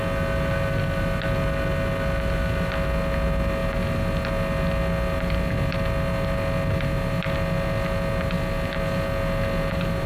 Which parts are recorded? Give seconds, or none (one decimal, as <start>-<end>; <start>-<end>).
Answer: 0.0-10.1